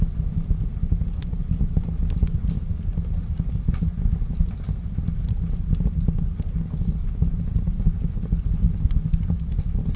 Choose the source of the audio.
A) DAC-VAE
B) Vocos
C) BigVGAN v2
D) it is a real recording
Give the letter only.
D